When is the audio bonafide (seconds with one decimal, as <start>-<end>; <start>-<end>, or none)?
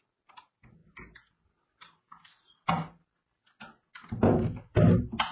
0.0-5.3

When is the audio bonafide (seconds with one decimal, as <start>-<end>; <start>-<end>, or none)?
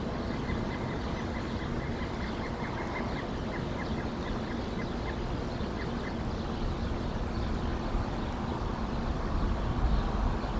0.0-10.6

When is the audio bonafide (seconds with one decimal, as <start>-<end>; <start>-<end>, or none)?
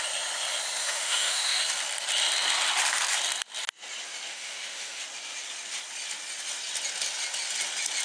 0.0-0.8; 1.6-4.3; 5.0-8.0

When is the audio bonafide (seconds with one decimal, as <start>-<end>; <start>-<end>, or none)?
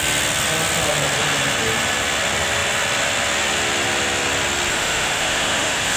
0.0-4.7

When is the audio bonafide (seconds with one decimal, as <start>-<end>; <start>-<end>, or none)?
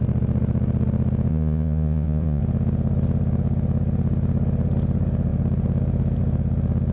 0.0-1.3; 2.4-6.9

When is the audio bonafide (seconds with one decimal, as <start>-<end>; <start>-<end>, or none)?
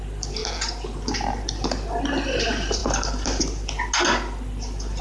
0.0-5.0